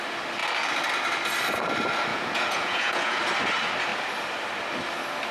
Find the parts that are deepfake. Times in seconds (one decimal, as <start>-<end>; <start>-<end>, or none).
2.1-3.2